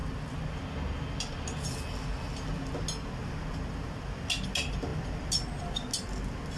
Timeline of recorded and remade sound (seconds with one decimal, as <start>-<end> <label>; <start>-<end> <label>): 0.0-6.6 recorded